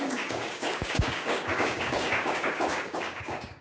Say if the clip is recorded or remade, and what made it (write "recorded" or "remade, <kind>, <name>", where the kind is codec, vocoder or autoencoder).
remade, codec, DAC